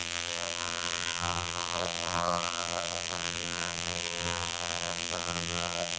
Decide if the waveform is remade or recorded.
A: remade